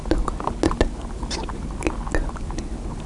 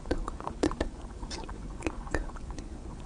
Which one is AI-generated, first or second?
second